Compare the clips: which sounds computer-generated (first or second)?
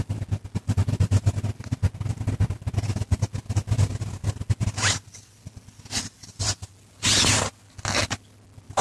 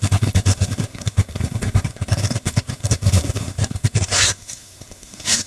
second